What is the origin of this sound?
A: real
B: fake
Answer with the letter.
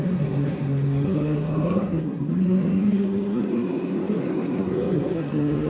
B